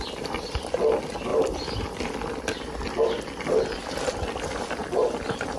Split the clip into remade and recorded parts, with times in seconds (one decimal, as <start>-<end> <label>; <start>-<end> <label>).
0.0-4.8 recorded; 4.8-5.6 remade